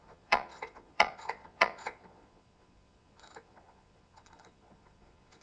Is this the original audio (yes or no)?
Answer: no